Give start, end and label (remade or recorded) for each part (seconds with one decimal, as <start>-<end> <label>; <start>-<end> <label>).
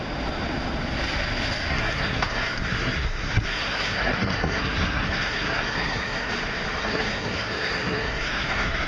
0.0-1.7 recorded; 1.7-6.3 remade; 6.3-6.8 recorded; 6.8-8.9 remade